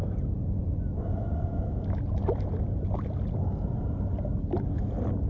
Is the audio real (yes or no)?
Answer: yes